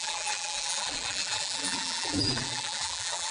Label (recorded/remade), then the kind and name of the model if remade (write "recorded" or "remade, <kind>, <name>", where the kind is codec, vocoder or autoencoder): remade, vocoder, BigVGAN v2